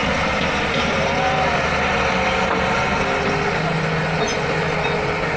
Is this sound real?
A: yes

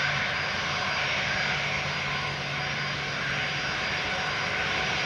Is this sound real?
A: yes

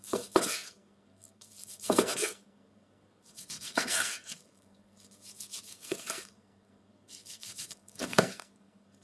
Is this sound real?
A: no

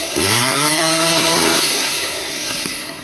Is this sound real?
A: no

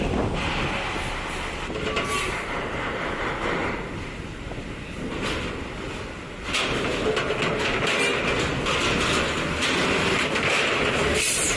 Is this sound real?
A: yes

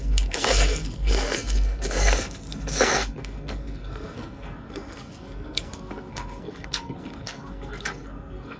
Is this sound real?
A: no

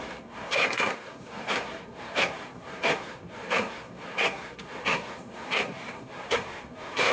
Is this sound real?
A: no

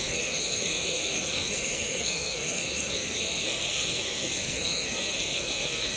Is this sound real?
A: no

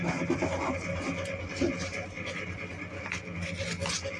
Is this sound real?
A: yes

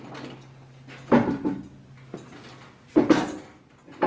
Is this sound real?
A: yes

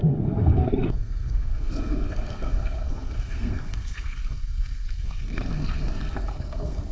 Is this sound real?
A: no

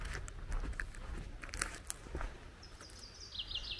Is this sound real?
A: yes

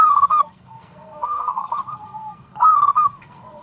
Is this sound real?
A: no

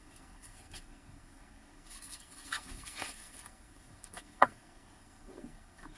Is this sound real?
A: no